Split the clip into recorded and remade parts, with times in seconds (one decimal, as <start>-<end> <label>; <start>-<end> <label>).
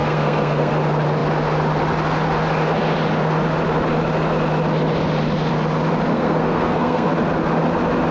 0.0-0.7 remade; 0.7-6.1 recorded; 6.1-7.1 remade; 7.1-8.1 recorded